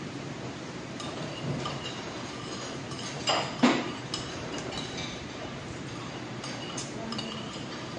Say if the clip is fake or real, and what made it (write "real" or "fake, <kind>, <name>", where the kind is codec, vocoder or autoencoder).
fake, vocoder, BigVGAN v2